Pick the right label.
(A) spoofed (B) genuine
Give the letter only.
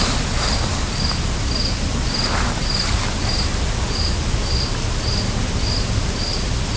B